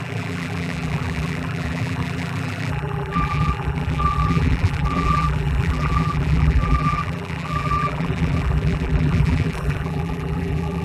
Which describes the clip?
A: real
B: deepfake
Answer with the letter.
B